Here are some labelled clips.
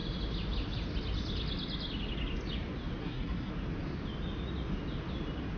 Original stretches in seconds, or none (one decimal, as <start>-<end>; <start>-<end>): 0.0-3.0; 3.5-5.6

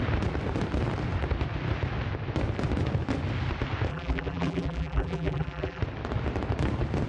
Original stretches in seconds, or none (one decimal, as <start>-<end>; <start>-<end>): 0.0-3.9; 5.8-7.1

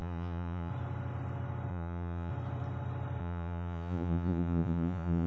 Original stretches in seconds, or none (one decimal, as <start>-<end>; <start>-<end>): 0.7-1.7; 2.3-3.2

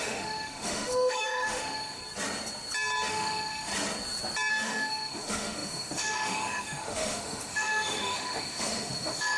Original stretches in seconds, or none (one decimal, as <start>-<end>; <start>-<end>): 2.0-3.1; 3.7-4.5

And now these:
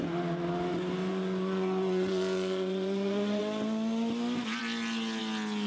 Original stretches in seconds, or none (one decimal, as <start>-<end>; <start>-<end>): 0.0-1.0; 3.4-5.7